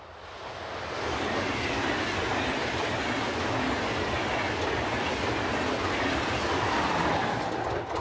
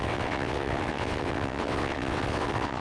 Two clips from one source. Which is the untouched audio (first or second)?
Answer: first